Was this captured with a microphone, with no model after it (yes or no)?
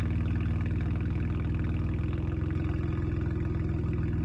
yes